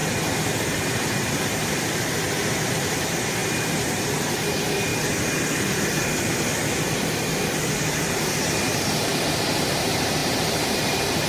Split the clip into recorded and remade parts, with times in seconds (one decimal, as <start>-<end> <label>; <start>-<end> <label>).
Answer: 0.0-0.8 recorded; 0.8-4.9 remade; 4.9-7.8 recorded; 7.8-11.3 remade